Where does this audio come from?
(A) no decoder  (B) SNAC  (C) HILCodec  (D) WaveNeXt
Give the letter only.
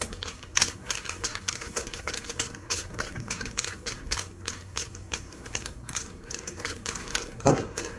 B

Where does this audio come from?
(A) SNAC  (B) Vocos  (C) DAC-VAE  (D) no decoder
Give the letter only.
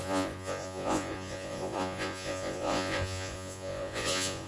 B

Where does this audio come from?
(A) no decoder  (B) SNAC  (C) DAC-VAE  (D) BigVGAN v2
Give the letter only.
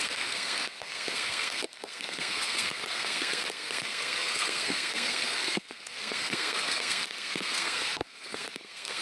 B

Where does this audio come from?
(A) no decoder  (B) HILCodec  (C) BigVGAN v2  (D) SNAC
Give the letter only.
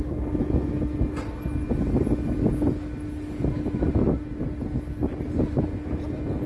A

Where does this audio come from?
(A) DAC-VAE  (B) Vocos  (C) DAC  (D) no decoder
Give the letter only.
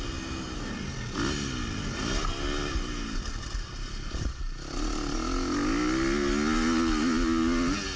D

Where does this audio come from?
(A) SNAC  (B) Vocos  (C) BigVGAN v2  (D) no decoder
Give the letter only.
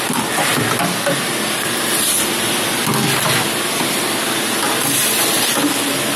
D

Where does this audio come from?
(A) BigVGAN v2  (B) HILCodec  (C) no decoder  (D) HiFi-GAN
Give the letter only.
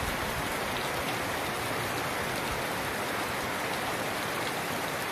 A